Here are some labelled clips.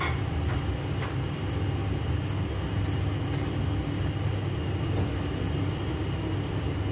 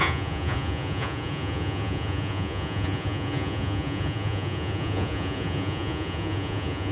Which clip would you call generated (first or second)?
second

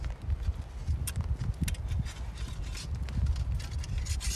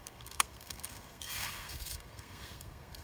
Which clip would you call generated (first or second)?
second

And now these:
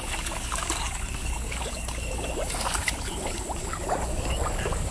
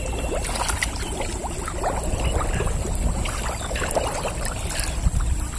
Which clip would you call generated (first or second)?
first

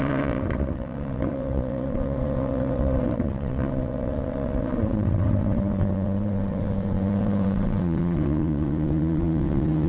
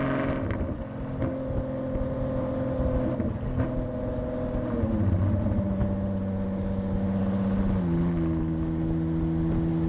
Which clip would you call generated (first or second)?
first